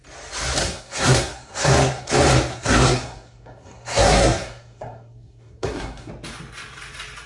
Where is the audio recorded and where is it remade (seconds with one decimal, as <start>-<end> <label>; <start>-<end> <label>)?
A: 0.0-0.6 recorded; 0.6-2.1 remade; 2.1-2.5 recorded; 2.5-6.1 remade; 6.1-7.3 recorded